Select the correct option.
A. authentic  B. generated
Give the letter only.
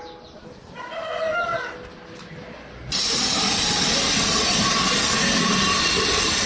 A